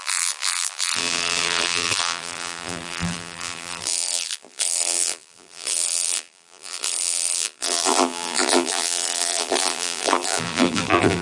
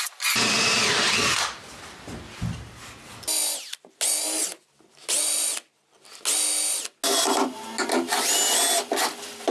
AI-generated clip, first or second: first